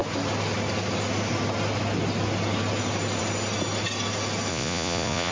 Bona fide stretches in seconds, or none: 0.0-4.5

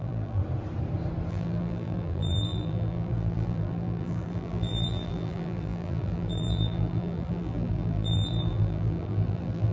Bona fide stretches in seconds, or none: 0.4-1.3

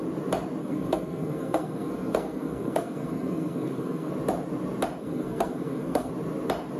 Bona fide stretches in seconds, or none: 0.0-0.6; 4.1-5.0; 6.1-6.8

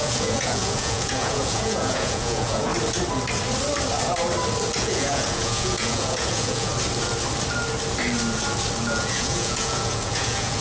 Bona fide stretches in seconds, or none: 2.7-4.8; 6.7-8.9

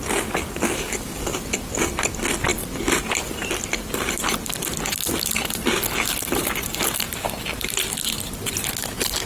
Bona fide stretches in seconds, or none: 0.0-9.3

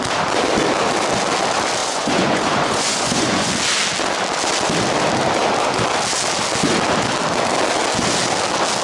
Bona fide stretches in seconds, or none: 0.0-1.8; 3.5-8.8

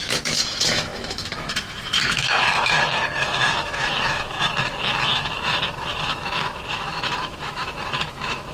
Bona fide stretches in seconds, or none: none

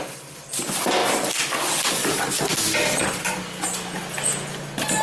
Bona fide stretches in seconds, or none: 0.0-5.0